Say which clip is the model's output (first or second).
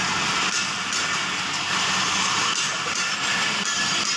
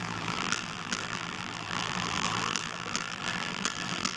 second